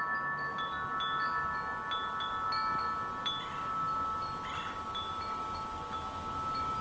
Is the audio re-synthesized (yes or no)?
no